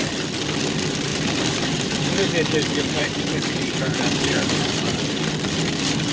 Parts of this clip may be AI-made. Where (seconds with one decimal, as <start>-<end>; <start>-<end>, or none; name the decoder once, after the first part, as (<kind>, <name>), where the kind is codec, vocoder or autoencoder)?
1.1-2.3 (vocoder, BigVGAN v2); 3.0-5.2